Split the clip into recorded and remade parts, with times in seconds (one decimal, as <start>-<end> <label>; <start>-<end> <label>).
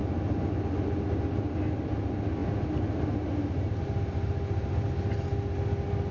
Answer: 0.0-6.1 recorded